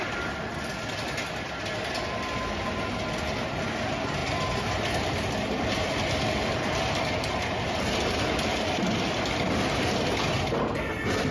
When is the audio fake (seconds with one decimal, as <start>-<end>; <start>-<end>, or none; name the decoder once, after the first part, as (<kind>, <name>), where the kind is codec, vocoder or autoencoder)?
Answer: none